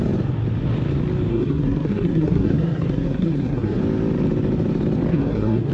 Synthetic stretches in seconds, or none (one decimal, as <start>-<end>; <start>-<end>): 1.3-3.8; 5.1-5.7